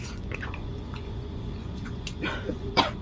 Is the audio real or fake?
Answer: fake